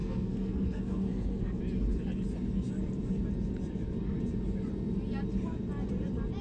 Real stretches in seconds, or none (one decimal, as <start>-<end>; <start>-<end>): 1.6-6.4